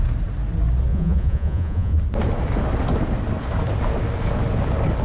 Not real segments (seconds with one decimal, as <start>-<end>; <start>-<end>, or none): 0.9-2.0